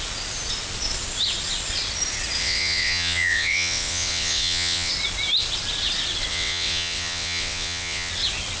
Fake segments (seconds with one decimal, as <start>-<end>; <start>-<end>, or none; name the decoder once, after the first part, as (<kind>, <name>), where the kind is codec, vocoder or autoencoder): 2.4-4.9 (vocoder, WaveNeXt); 6.3-8.1